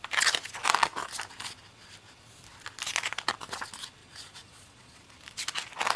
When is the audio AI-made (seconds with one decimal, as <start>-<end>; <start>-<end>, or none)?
4.0-5.0